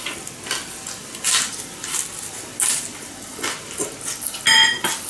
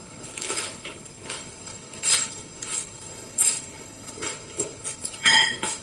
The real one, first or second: first